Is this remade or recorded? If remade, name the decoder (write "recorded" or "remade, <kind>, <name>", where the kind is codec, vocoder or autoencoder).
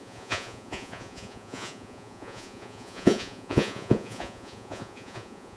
remade, vocoder, Vocos